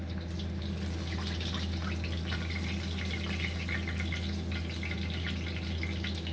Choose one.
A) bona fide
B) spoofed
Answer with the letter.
A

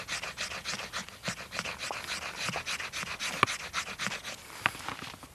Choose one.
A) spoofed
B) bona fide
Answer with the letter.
B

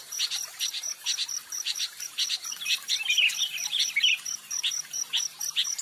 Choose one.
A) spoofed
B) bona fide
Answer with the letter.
A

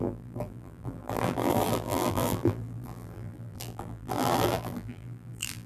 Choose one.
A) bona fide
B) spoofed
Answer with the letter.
B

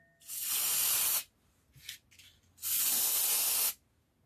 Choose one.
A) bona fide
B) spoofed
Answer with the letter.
A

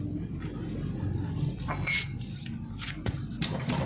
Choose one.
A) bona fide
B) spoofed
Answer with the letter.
B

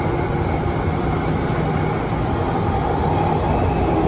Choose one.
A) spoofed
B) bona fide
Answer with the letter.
B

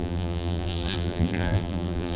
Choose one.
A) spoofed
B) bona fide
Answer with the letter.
A